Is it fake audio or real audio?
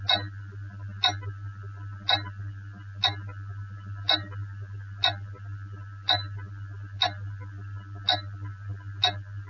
real